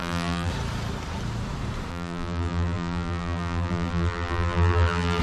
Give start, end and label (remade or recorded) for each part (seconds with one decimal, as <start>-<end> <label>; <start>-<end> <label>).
0.0-0.5 remade; 0.5-1.9 recorded; 1.9-5.2 remade